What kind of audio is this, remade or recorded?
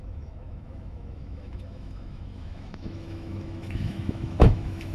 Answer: remade